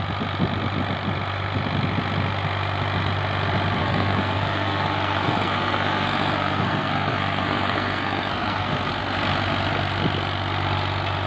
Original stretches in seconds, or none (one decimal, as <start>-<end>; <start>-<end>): 0.0-3.8; 8.9-11.3